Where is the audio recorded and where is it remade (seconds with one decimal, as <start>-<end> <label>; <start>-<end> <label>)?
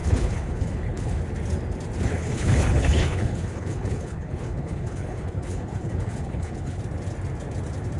0.0-1.2 remade; 1.2-2.1 recorded; 2.1-6.8 remade; 6.8-8.0 recorded